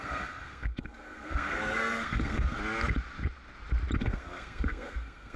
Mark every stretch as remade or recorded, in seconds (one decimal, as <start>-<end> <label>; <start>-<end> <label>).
0.0-2.6 remade; 2.6-4.0 recorded; 4.0-5.4 remade

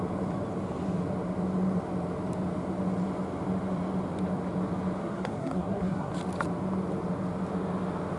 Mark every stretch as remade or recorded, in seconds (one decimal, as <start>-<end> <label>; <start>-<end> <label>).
0.0-5.0 recorded; 5.0-6.1 remade; 6.1-8.2 recorded